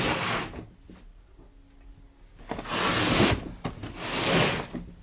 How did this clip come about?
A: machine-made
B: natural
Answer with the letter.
B